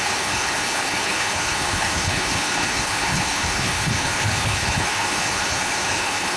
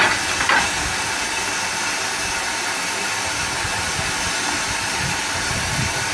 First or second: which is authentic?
second